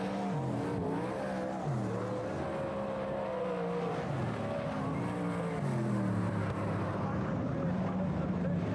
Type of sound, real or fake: real